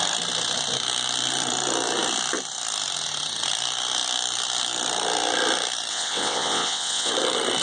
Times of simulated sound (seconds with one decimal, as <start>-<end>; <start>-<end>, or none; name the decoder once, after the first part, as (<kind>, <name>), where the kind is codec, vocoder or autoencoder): 5.9-7.1 (vocoder, WaveNeXt)

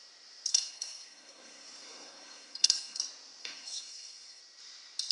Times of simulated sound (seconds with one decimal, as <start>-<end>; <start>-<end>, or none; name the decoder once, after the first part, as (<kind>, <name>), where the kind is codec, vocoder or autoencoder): 0.5-3.0 (codec, SNAC); 3.4-4.4

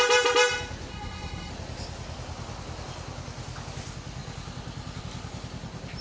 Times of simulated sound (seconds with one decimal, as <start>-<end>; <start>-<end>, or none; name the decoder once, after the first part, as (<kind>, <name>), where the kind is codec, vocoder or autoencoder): 0.9-1.5 (codec, SNAC)

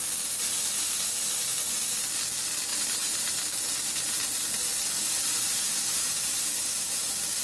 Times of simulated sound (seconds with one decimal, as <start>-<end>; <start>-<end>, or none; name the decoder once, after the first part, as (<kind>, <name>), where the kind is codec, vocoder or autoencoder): 2.7-6.5 (vocoder, BigVGAN v2)

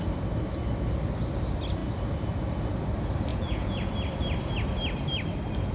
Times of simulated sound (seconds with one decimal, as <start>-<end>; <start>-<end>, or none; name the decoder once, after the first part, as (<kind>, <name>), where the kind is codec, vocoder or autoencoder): 3.3-3.9 (vocoder, Vocos)

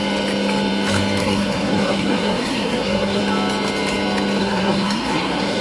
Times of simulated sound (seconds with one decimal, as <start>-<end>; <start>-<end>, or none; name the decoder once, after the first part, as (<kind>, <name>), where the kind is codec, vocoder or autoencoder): 1.2-3.2 (codec, SNAC); 4.4-5.6

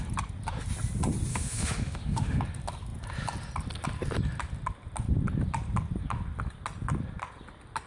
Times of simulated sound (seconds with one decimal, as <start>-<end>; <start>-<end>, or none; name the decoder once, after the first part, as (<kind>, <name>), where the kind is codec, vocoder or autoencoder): 1.3-2.4 (autoencoder, DAC-VAE)